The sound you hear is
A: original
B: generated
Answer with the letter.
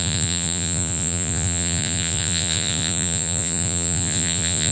B